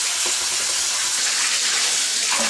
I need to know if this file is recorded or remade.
recorded